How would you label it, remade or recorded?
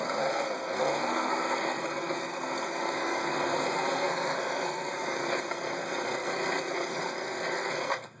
remade